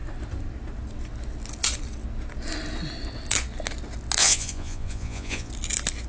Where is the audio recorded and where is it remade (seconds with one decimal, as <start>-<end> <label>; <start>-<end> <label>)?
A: 0.0-4.2 recorded; 4.2-5.5 remade; 5.5-6.1 recorded